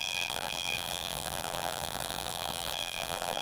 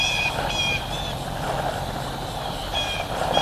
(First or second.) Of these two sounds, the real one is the second